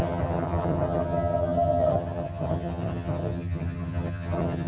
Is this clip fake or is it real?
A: fake